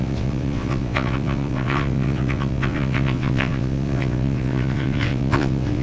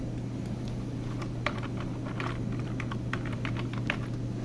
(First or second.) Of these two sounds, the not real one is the first